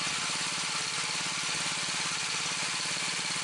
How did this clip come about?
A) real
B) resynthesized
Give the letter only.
A